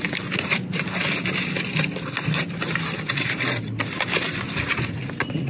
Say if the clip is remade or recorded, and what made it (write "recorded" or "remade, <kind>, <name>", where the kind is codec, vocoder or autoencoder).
recorded